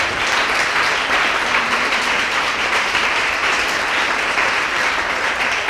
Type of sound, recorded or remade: remade